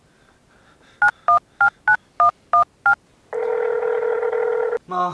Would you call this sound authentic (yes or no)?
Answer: yes